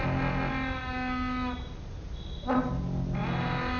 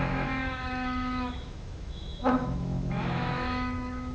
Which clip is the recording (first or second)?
first